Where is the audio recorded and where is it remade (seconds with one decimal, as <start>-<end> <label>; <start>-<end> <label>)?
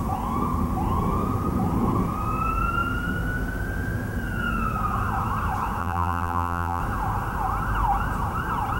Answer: 0.0-5.8 recorded; 5.8-6.8 remade; 6.8-8.8 recorded